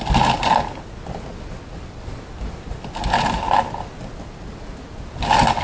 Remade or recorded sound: recorded